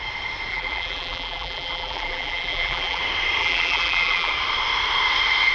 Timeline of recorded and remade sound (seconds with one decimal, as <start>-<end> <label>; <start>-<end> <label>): 0.0-0.5 recorded; 0.5-3.0 remade; 3.0-3.4 recorded; 3.4-4.3 remade; 4.3-5.5 recorded